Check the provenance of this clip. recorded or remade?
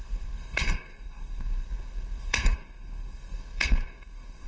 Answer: remade